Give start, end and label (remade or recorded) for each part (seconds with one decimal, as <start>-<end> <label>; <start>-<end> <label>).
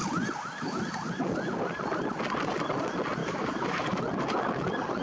0.0-3.2 recorded; 3.2-4.0 remade; 4.0-5.0 recorded